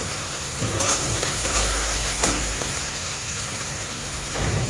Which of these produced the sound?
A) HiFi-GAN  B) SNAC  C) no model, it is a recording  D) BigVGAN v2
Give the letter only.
B